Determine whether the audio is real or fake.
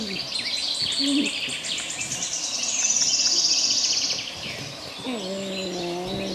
real